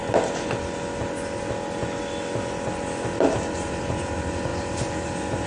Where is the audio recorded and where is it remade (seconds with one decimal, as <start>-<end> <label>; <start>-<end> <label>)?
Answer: 0.0-5.5 recorded